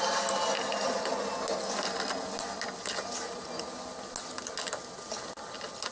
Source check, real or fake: real